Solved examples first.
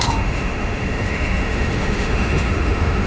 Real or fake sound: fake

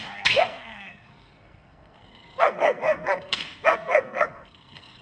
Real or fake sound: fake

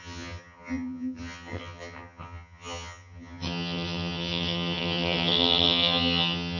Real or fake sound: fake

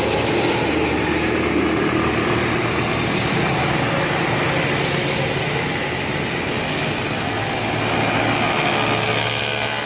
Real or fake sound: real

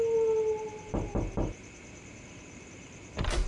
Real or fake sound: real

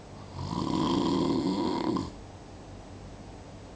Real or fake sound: real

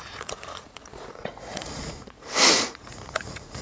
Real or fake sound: fake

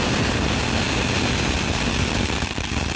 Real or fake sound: real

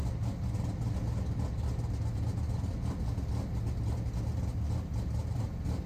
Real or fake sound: real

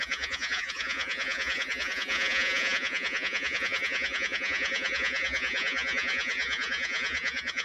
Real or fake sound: fake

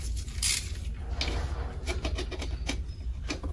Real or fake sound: real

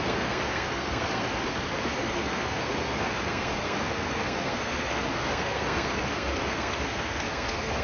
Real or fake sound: fake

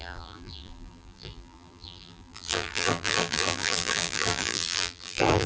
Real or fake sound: fake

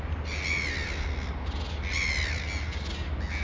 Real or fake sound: real